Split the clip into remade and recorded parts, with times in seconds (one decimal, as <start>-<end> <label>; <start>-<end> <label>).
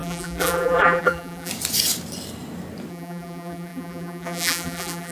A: 0.0-1.5 remade; 1.5-2.9 recorded; 2.9-5.1 remade